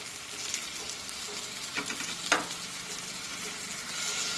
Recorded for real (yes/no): yes